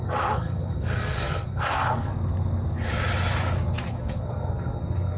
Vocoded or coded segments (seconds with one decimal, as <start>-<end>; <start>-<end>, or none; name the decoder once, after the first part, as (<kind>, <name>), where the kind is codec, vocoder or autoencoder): 0.0-2.1 (codec, SNAC); 3.9-5.2